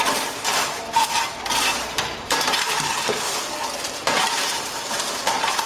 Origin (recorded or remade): remade